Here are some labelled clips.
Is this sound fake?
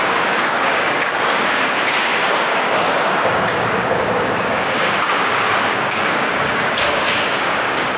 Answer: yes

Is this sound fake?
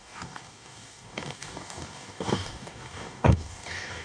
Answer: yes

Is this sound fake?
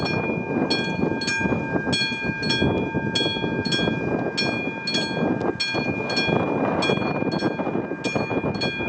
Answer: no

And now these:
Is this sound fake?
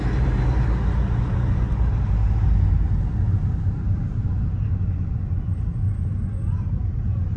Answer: no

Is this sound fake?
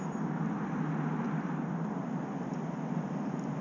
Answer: no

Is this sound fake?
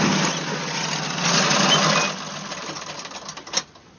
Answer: no